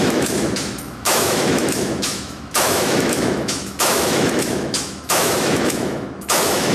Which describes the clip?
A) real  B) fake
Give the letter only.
B